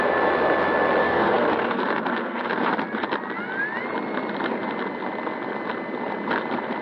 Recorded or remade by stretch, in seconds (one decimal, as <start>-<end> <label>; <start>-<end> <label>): 0.0-1.0 recorded; 1.0-2.7 remade; 2.7-6.8 recorded